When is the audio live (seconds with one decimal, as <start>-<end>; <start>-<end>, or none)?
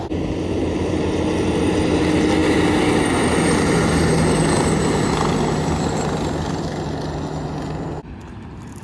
0.0-8.8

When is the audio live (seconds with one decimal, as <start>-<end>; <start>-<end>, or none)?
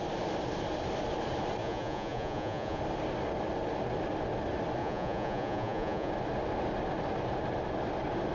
0.0-1.6; 2.8-4.8; 6.1-8.3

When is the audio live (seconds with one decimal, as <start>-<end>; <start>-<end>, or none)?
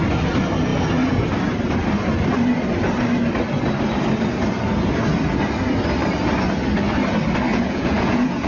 0.0-7.5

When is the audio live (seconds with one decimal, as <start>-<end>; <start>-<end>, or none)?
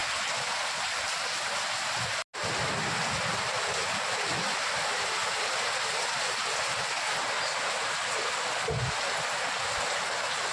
0.0-10.5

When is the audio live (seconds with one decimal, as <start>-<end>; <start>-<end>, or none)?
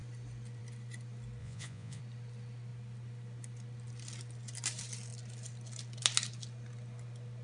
0.0-1.4; 2.0-7.4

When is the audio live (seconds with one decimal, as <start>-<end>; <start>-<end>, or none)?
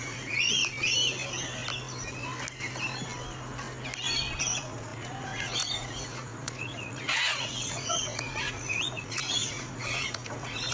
0.6-4.4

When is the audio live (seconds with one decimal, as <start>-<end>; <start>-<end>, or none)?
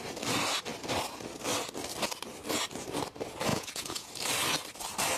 0.0-3.5; 4.1-5.2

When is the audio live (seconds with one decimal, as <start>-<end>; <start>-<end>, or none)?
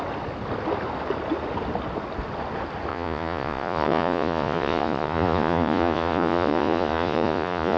0.0-2.9